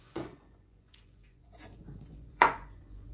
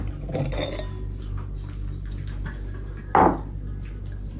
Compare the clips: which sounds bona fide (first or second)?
second